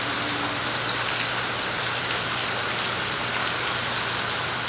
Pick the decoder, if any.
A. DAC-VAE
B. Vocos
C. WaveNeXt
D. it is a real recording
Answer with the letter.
D